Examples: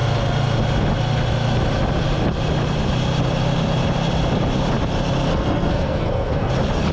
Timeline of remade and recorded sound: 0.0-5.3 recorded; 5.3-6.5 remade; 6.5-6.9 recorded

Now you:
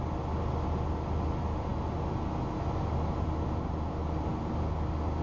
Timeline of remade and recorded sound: 0.0-5.2 recorded

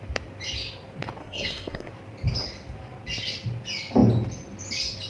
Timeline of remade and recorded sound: 0.0-1.2 recorded; 1.2-1.9 remade; 1.9-5.1 recorded

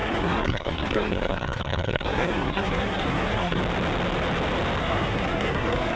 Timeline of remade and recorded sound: 0.0-3.6 remade; 3.6-4.8 recorded; 4.8-6.0 remade

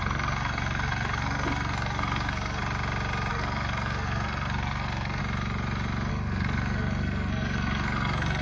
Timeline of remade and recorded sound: 0.0-2.6 remade; 2.6-3.3 recorded; 3.3-5.2 remade; 5.2-6.1 recorded; 6.1-8.4 remade

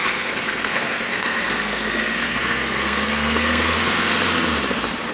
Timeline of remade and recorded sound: 0.0-4.1 remade; 4.1-5.1 recorded